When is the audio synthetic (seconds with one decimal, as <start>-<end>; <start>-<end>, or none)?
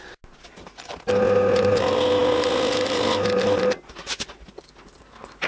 none